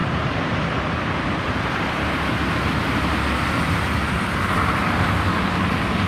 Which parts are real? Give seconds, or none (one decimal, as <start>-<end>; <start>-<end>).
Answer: 0.8-1.4; 2.5-6.1